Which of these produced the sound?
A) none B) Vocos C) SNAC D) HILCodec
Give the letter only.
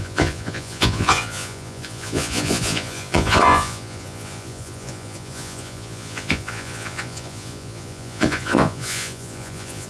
B